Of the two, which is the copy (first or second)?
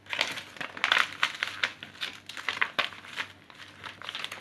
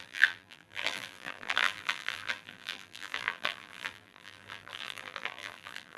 second